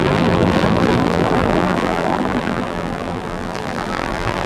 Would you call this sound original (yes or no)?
no